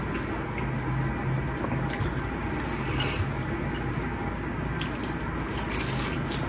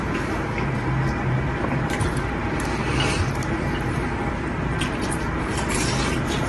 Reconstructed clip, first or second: second